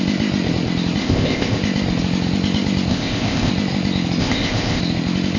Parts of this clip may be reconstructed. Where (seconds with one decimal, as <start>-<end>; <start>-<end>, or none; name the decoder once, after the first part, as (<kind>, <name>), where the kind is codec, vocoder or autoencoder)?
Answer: 1.0-1.6 (codec, ZipCodec); 2.9-3.5; 4.2-4.8